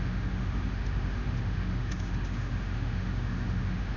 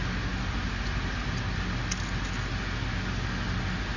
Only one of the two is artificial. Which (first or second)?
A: first